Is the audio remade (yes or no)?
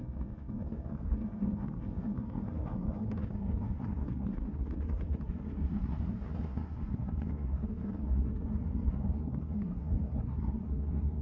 yes